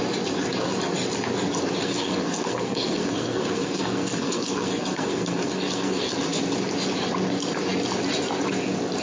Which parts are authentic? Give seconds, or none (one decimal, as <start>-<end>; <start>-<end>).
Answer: 0.0-1.8; 6.1-9.0